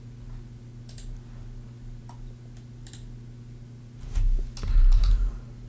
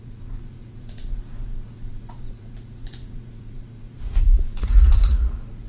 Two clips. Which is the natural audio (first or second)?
first